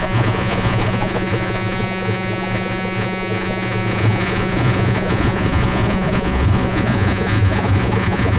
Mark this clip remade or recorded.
remade